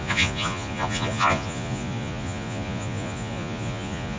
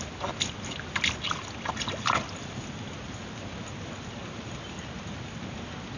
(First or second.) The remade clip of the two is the first